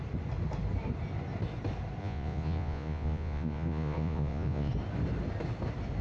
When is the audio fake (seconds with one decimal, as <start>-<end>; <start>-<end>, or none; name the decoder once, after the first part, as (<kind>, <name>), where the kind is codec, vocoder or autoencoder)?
2.0-4.7 (vocoder, Vocos)